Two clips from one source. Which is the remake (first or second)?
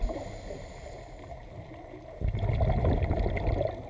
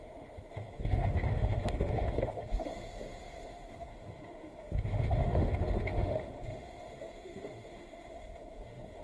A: second